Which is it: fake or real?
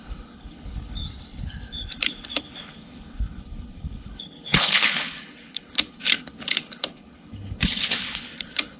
fake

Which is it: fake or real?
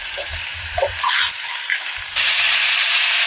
fake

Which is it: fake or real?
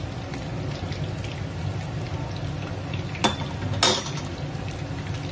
real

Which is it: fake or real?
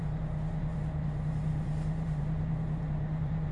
fake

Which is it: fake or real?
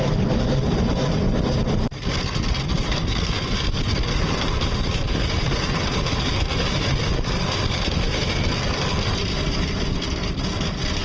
real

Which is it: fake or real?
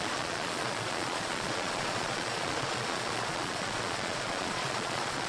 fake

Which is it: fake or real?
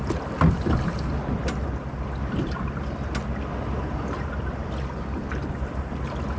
real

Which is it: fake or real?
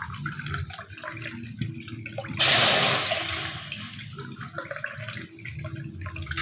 real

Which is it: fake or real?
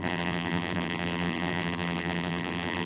fake